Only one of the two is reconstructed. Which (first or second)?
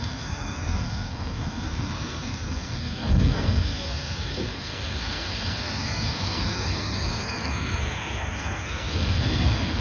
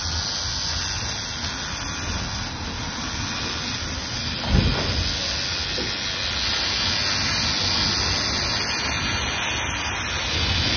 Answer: first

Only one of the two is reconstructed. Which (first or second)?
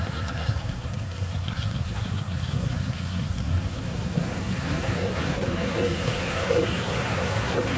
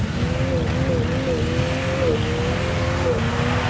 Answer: first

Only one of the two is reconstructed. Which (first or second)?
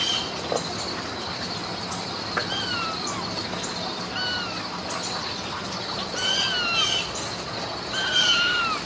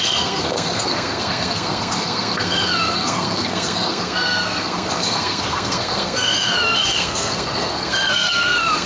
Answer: second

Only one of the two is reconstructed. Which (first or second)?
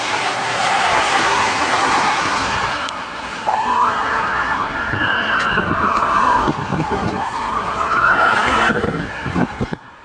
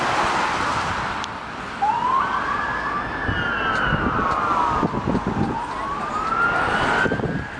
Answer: first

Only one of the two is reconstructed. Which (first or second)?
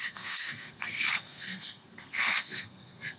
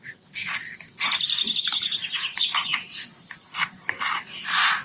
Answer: first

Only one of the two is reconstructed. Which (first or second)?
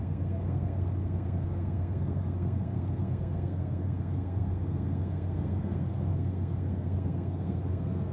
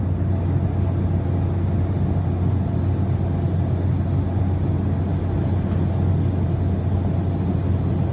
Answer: first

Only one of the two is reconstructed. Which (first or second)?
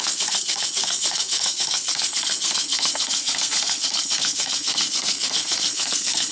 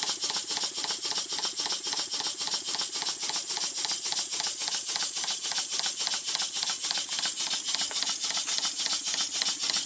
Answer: first